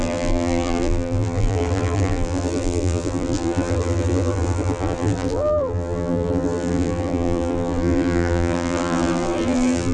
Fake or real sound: fake